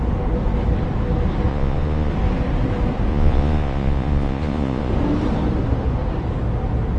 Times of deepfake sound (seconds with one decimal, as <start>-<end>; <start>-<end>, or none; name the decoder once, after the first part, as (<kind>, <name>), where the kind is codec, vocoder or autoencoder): 1.5-2.1 (vocoder, Vocos); 3.1-4.9